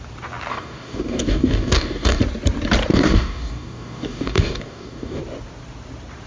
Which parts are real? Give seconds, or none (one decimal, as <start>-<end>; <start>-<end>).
0.0-0.5; 2.2-2.9; 5.2-6.3